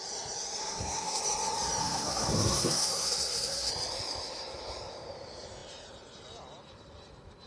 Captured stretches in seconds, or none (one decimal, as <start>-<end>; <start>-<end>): 0.0-0.6; 1.2-1.8; 3.7-7.5